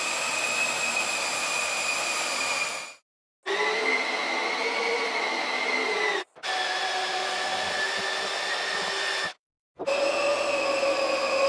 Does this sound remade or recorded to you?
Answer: recorded